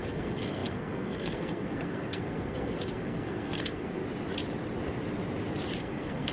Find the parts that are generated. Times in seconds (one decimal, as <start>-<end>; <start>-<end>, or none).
0.0-4.0; 5.8-6.3

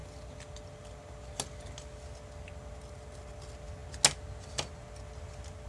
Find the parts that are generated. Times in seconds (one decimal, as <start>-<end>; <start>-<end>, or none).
none

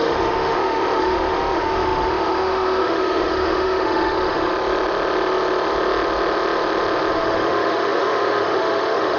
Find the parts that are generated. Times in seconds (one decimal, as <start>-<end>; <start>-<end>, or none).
0.0-4.5; 7.1-9.2

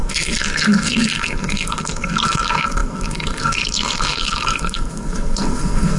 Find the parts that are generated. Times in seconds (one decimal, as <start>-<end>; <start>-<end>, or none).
0.0-6.0

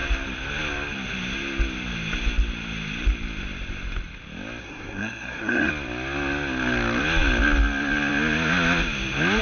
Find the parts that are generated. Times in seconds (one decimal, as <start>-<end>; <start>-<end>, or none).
4.6-5.7

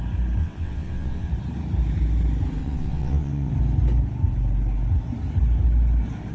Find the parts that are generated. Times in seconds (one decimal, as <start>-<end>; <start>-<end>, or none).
0.4-1.3; 2.6-3.5